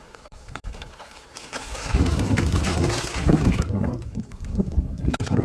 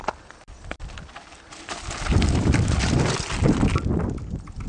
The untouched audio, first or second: second